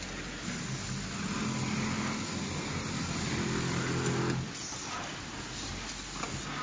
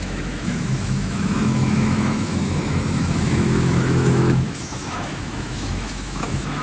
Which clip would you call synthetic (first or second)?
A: second